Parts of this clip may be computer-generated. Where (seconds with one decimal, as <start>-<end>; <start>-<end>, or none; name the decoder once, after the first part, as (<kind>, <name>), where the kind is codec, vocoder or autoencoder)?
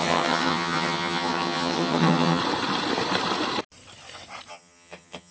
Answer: 0.0-2.4 (vocoder, HiFi-GAN); 4.5-5.3